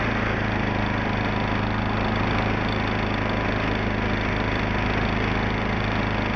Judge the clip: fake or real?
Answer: real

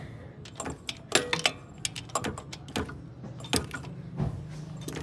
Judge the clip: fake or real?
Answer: real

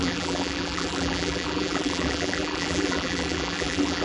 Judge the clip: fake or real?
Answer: fake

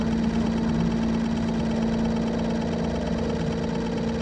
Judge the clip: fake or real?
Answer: real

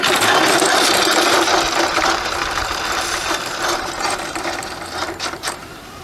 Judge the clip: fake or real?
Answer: fake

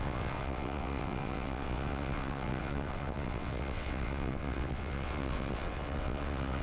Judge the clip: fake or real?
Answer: fake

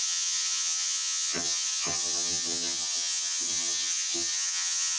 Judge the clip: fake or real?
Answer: fake